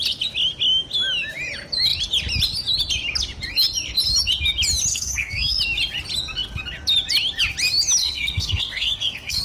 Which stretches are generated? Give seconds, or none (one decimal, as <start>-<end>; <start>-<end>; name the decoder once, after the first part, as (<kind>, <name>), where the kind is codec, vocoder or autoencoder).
4.9-5.6 (codec, SNAC); 8.0-9.4